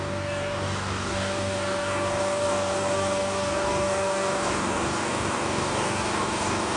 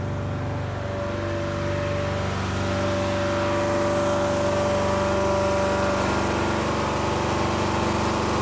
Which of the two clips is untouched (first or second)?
second